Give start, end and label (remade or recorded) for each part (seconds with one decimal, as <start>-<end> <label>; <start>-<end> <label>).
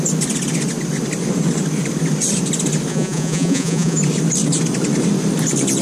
0.0-2.9 recorded; 2.9-4.0 remade; 4.0-5.8 recorded